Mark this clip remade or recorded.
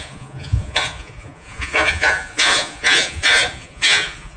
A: remade